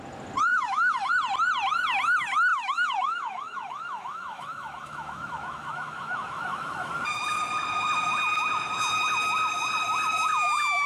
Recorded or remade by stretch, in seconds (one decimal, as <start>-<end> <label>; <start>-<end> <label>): 0.0-0.5 recorded; 0.5-1.1 remade; 1.1-2.5 recorded; 2.5-6.9 remade; 6.9-10.9 recorded